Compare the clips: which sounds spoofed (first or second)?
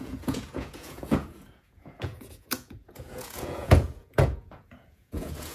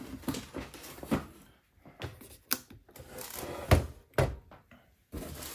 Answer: first